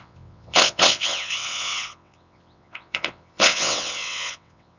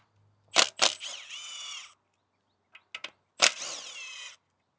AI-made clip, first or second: first